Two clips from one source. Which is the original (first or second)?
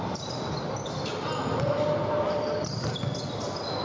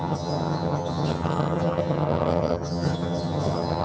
first